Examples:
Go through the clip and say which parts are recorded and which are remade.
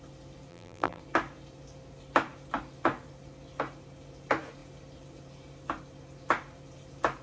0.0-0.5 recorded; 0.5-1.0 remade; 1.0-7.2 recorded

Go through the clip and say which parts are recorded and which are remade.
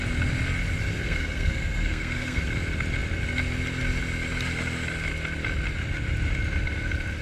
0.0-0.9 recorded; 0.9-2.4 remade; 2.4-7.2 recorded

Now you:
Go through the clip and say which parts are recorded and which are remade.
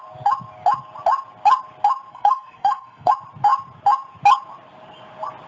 0.0-2.1 recorded; 2.1-3.1 remade; 3.1-5.5 recorded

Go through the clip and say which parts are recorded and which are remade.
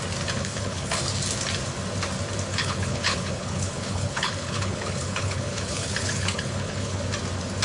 0.0-0.4 recorded; 0.4-1.0 remade; 1.0-2.5 recorded; 2.5-7.0 remade; 7.0-7.6 recorded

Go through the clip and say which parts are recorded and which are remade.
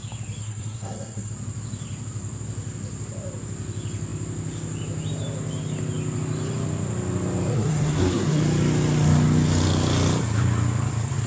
0.0-0.4 recorded; 0.4-1.3 remade; 1.3-7.5 recorded; 7.5-8.4 remade; 8.4-11.3 recorded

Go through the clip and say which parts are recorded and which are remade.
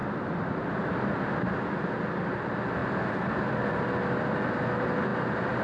0.0-5.6 recorded